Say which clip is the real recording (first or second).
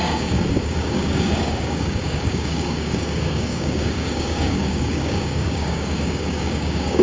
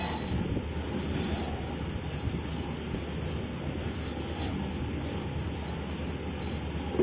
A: second